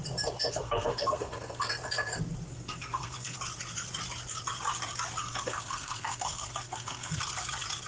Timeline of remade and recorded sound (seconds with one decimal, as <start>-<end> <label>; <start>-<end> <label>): 0.0-0.5 recorded; 0.5-1.6 remade; 1.6-2.5 recorded; 2.5-3.4 remade; 3.4-5.2 recorded; 5.2-7.2 remade; 7.2-7.9 recorded